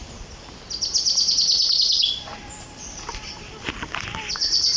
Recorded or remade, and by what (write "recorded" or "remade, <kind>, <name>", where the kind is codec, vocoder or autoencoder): recorded